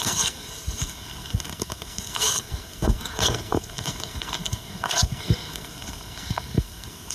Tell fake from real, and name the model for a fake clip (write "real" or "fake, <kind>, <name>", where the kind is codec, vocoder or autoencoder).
fake, codec, SNAC